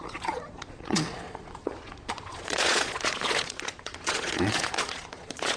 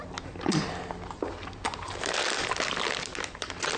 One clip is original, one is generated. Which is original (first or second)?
second